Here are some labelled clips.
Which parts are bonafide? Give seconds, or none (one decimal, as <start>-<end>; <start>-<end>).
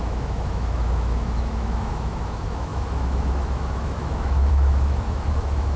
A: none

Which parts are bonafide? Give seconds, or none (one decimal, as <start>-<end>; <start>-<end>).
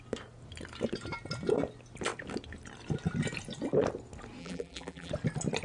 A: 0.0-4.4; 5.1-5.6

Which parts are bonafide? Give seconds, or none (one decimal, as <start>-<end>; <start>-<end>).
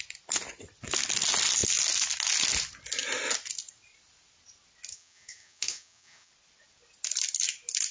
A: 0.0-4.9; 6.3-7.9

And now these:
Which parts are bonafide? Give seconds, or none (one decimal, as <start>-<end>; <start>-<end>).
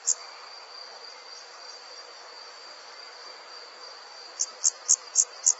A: 0.6-1.3; 4.7-5.6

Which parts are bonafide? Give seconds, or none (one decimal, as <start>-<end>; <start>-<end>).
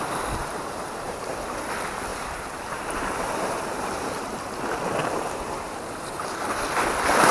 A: 0.0-0.4; 1.3-2.1; 4.6-5.0; 6.3-7.3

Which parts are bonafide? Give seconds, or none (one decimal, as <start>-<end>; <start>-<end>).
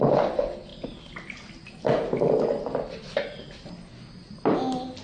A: 0.0-5.0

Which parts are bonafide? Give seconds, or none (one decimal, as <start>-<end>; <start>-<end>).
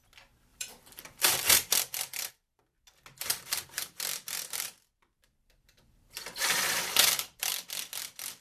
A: 0.0-0.5; 2.3-3.3; 7.5-8.4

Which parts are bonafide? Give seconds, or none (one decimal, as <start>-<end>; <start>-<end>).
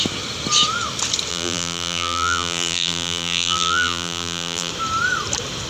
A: 0.0-1.3; 4.7-5.7